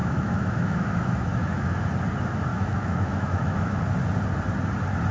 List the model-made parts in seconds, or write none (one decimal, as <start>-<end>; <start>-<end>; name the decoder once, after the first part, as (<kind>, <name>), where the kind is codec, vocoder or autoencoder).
0.0-1.9 (autoencoder, DAC-VAE); 2.5-3.8